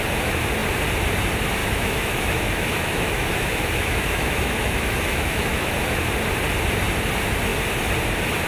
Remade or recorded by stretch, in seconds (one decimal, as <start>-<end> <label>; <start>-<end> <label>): 0.0-1.6 recorded; 1.6-5.7 remade; 5.7-8.5 recorded